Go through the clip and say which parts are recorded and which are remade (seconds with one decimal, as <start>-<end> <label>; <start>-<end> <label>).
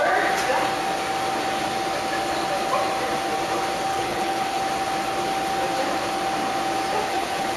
0.0-3.9 recorded; 3.9-4.6 remade; 4.6-7.1 recorded; 7.1-7.6 remade